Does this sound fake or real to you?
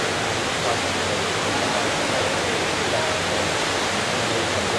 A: real